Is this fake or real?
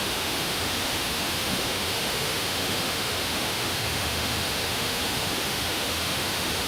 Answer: fake